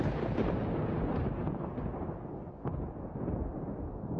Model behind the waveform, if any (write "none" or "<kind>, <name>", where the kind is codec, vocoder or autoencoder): none